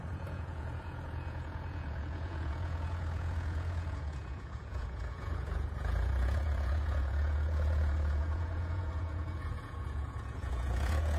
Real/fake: fake